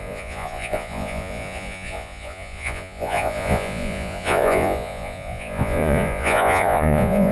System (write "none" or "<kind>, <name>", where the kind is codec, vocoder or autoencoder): vocoder, Vocos